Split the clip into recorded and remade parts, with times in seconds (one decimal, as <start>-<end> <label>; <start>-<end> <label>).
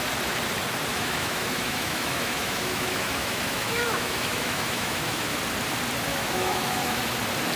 0.0-0.9 recorded; 0.9-5.4 remade; 5.4-6.1 recorded; 6.1-7.0 remade; 7.0-7.6 recorded